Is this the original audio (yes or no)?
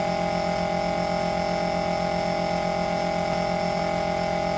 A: yes